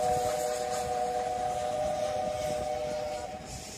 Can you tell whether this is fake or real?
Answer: real